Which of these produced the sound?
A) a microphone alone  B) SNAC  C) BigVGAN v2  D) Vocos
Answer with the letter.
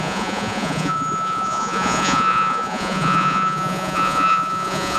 D